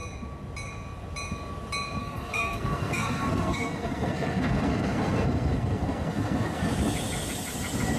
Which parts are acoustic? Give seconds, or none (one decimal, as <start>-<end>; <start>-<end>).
0.0-2.0; 6.6-8.0